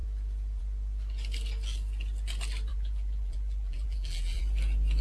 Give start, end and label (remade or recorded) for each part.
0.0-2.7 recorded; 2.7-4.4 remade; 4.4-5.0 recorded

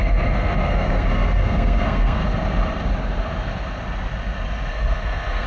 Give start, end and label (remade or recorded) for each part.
0.0-2.2 remade; 2.2-4.7 recorded; 4.7-5.5 remade

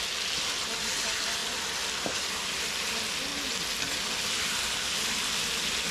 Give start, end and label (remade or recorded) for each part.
0.0-5.9 recorded